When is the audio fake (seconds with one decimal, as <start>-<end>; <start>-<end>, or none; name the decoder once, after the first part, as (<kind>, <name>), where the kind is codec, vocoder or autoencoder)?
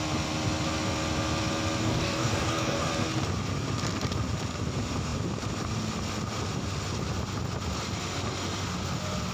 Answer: 1.8-2.9 (codec, DAC)